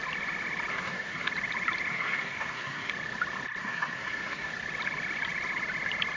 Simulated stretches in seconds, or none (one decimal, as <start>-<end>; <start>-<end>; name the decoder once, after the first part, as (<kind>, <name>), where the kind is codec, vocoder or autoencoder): 0.7-1.3 (codec, SNAC); 1.9-2.9; 3.6-4.5